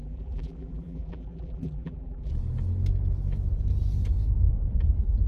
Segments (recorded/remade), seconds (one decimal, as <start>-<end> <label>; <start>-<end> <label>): 0.0-2.3 remade; 2.3-5.3 recorded